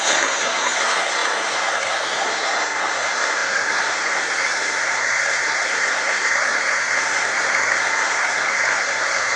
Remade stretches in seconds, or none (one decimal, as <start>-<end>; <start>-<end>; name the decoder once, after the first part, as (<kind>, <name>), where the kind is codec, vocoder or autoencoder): 0.0-9.4 (codec, SNAC)